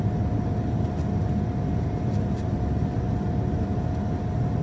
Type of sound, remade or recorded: recorded